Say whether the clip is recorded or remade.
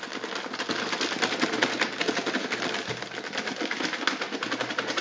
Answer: recorded